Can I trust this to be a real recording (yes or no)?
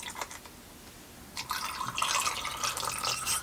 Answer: yes